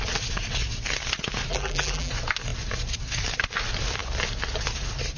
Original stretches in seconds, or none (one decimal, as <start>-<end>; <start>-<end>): 0.0-1.5; 2.1-5.2